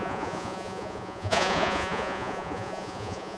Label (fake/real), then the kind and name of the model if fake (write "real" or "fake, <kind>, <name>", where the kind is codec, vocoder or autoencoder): fake, vocoder, Vocos